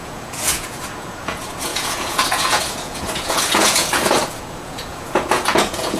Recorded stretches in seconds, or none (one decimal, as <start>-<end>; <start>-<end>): none